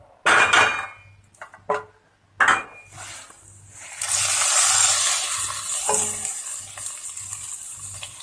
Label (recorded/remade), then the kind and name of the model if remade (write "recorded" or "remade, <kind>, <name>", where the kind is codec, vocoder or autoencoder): recorded